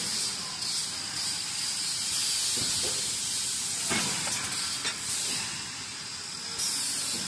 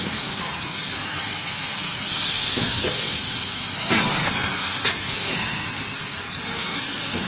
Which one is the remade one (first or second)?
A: second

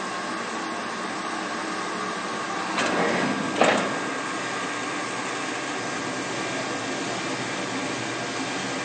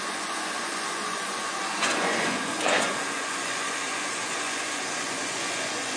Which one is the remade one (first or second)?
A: second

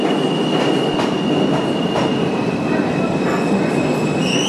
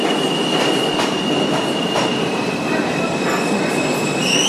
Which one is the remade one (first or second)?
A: second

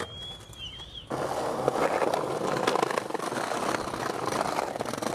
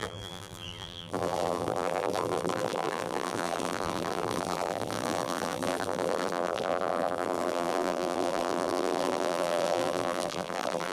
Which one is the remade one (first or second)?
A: second